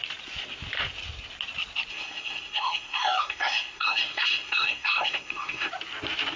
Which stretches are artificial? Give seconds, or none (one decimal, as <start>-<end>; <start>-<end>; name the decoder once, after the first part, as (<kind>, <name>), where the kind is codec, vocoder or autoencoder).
1.9-5.7 (codec, SNAC)